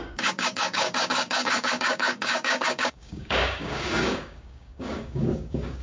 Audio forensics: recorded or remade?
remade